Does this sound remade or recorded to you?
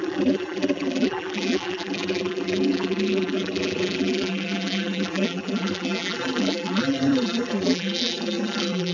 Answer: remade